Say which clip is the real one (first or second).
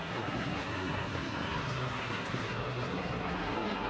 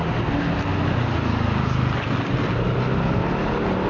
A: second